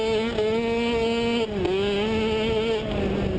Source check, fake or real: real